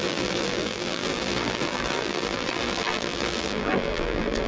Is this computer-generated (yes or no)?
yes